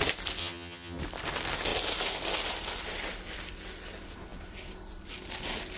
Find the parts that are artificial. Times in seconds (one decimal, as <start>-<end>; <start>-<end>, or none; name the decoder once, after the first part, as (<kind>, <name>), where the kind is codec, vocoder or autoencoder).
0.4-1.0 (vocoder, HiFi-GAN)